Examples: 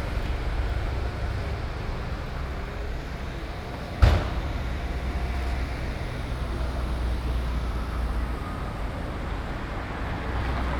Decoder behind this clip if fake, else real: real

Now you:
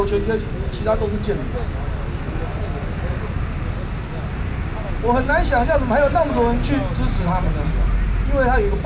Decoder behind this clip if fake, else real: real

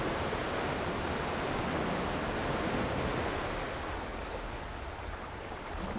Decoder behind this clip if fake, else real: real